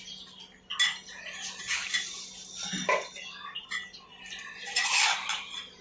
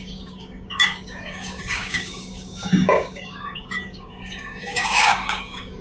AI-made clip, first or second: second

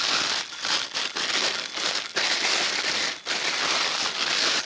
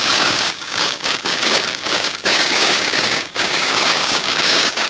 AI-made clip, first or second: second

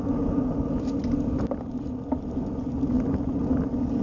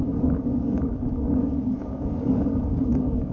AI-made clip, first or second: second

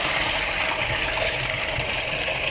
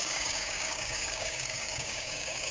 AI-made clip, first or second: second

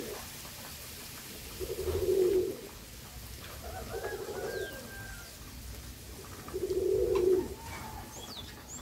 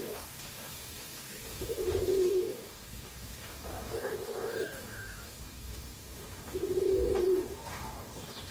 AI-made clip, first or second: second